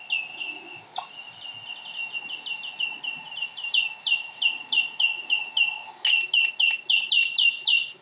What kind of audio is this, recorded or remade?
recorded